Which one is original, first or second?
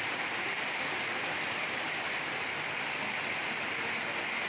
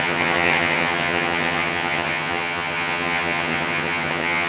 first